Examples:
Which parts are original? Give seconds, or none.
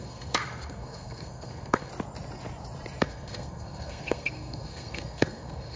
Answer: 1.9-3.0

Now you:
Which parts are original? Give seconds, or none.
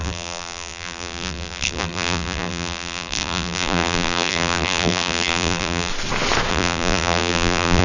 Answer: 5.9-6.5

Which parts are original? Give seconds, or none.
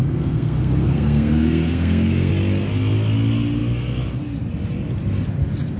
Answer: 2.3-5.8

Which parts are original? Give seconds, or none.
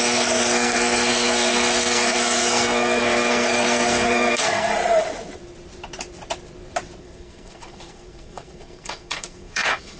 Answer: 4.7-7.0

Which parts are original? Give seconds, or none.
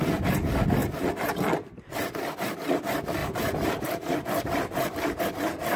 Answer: 0.0-0.8; 1.3-3.2; 5.2-5.8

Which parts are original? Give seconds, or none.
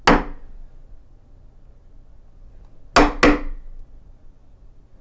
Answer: 0.0-5.0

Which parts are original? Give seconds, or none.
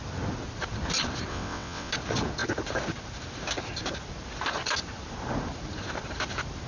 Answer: 0.0-1.3; 1.9-6.7